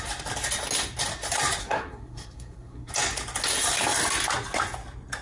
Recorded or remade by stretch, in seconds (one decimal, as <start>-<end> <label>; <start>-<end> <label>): 0.0-1.6 recorded; 1.6-2.9 remade; 2.9-5.2 recorded